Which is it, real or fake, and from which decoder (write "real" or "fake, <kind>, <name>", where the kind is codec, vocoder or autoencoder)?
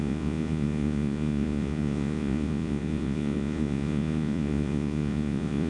fake, vocoder, Vocos